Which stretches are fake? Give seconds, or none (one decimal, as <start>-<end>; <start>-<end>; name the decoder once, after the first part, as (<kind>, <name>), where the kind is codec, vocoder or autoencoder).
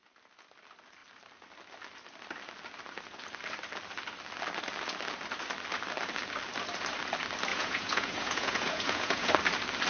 7.5-9.3 (vocoder, Vocos)